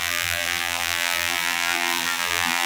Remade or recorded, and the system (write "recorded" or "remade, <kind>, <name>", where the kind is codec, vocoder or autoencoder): remade, vocoder, BigVGAN v2